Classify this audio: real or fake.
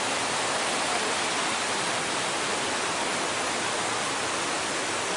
real